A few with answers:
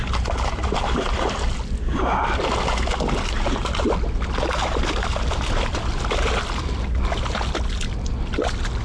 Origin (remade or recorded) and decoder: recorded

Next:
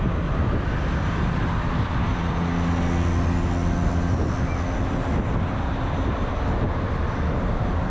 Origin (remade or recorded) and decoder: recorded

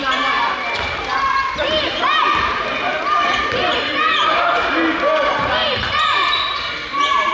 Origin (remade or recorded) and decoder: remade, vocoder, BigVGAN v2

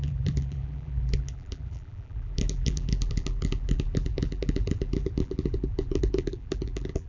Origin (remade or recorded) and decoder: remade, vocoder, BigVGAN v2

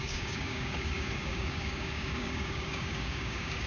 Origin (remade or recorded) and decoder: remade, codec, DAC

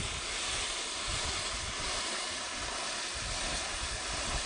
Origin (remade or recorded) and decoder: recorded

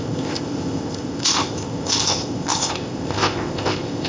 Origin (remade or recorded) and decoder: remade, codec, ZipCodec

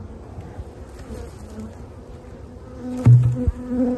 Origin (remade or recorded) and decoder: recorded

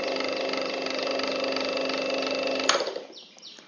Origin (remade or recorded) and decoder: recorded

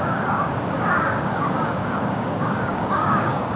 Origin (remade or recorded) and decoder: remade, codec, DAC